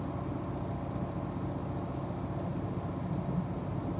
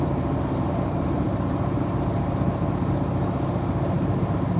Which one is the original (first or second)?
first